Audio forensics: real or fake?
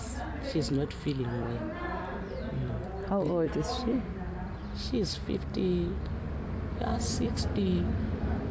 fake